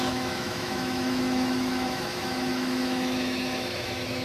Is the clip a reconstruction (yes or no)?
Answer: yes